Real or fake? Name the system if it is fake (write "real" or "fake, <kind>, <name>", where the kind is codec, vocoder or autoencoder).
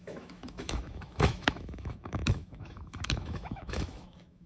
fake, autoencoder, DAC-VAE